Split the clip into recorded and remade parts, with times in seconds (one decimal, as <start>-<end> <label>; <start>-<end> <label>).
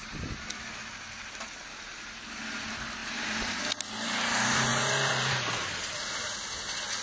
0.0-1.6 recorded; 1.6-2.2 remade; 2.2-3.0 recorded; 3.0-3.6 remade; 3.6-4.7 recorded; 4.7-6.2 remade; 6.2-7.0 recorded